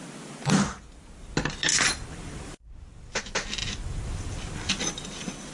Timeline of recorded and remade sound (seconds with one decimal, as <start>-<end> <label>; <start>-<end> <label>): 0.0-1.7 recorded; 1.7-3.2 remade; 3.2-3.6 recorded; 3.6-4.7 remade; 4.7-5.5 recorded